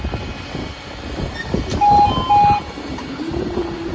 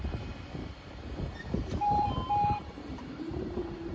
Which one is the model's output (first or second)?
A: second